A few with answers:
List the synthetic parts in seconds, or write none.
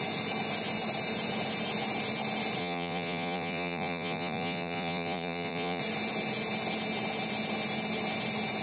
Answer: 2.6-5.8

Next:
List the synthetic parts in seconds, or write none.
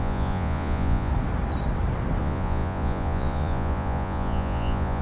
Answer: 0.0-1.1; 2.2-5.0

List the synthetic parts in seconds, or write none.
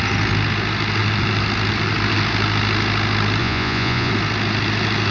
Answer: 3.4-4.1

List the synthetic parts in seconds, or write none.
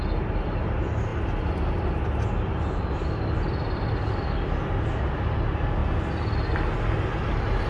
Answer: none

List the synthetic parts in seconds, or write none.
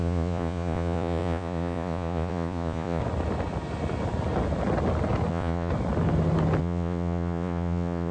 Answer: 0.0-3.0; 5.3-5.7; 6.6-8.1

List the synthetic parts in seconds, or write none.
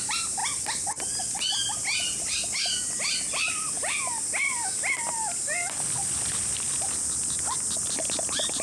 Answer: none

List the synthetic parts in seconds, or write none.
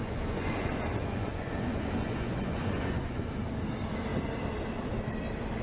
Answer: 0.0-3.3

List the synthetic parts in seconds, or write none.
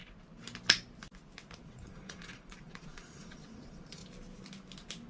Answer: 1.6-4.0